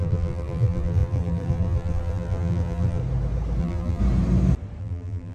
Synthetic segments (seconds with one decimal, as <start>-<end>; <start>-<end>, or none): 0.0-3.0; 3.6-4.0; 4.8-5.3